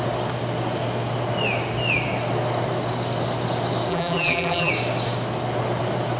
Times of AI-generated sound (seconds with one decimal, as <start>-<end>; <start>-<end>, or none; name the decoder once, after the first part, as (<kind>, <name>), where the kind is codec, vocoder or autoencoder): 3.9-4.7 (vocoder, BigVGAN v2)